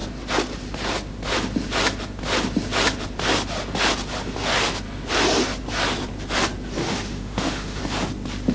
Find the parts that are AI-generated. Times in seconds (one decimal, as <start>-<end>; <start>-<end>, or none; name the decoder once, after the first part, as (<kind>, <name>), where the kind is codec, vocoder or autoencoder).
6.8-7.8 (autoencoder, DAC-VAE)